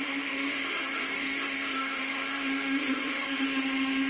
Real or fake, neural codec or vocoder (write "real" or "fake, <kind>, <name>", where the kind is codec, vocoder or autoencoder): fake, autoencoder, DAC-VAE